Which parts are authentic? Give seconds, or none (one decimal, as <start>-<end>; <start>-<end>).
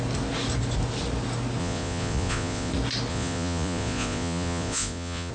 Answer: 0.0-1.6; 2.7-3.1